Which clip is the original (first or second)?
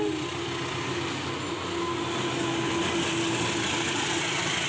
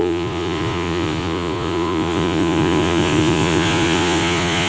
first